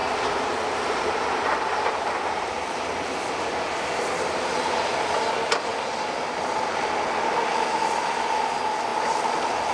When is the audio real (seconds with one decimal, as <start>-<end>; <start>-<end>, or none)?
4.0-9.7